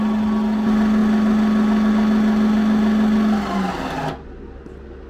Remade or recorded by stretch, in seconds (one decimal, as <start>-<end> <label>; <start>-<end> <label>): 0.0-5.1 recorded